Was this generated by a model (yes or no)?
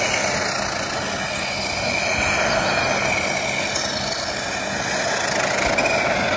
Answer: no